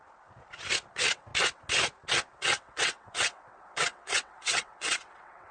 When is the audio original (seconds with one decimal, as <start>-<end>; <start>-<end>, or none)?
0.0-0.9; 1.3-2.3